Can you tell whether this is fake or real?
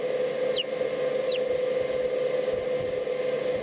real